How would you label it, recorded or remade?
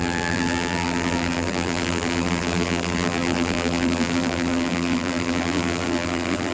remade